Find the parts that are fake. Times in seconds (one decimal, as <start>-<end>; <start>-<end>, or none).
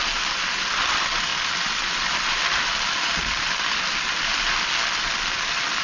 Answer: none